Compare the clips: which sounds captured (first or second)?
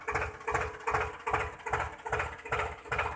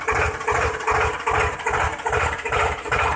first